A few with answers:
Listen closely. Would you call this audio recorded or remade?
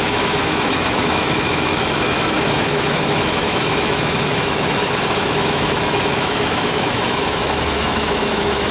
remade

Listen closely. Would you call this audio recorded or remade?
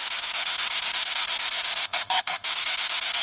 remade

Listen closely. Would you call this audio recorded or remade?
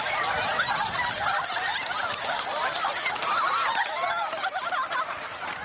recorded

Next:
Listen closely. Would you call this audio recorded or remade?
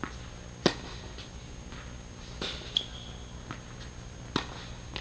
recorded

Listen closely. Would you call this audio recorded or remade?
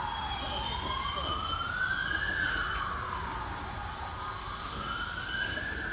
recorded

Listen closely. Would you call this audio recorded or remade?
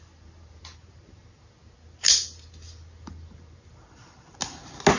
recorded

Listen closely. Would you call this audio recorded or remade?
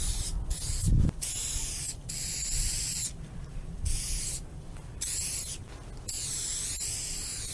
recorded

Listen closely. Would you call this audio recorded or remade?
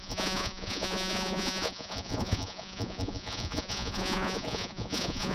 remade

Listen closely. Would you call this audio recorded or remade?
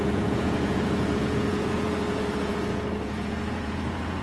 remade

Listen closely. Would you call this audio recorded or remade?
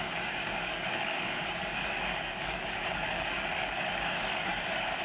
remade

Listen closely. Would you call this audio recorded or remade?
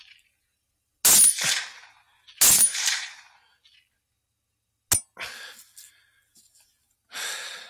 recorded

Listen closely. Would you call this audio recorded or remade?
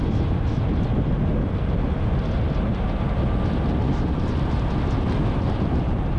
recorded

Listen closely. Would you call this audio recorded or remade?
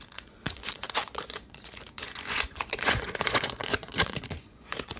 remade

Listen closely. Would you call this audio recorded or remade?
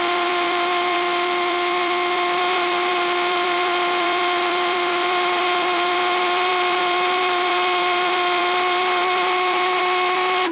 remade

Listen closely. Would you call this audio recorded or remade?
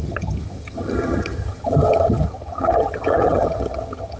remade